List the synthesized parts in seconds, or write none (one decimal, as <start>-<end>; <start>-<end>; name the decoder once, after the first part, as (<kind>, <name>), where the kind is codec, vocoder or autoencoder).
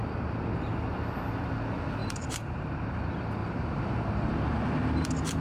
2.0-3.0 (vocoder, BigVGAN v2); 3.4-4.3